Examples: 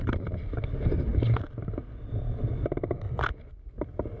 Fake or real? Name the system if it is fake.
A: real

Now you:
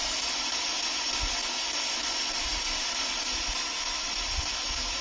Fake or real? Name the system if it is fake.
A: real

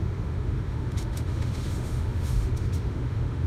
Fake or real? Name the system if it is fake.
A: fake, autoencoder, DAC-VAE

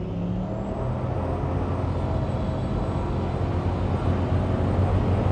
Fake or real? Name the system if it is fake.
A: real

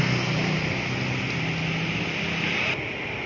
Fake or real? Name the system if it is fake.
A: real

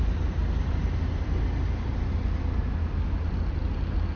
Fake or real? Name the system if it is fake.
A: real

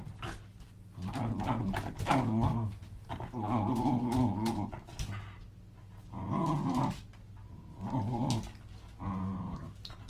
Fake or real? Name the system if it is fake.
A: real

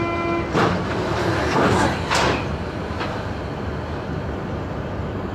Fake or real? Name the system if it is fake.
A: real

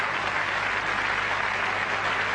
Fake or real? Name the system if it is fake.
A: real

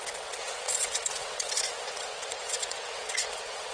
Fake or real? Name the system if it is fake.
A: fake, vocoder, WaveNeXt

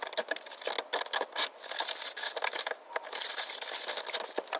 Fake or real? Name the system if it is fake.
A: real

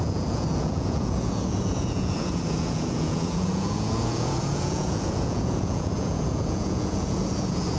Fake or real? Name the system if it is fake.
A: fake, vocoder, Vocos